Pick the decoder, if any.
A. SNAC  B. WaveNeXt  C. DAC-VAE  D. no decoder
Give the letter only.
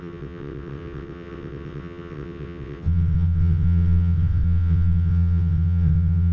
B